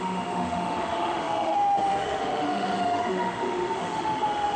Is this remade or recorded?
remade